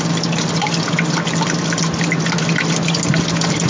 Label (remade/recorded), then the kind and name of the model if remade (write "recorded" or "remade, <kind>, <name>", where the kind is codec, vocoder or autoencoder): recorded